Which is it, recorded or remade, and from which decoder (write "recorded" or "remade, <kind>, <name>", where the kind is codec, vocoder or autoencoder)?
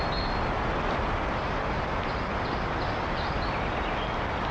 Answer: recorded